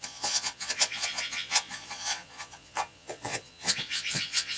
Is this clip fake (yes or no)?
yes